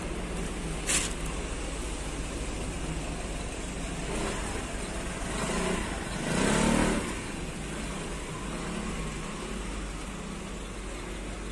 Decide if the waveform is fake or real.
real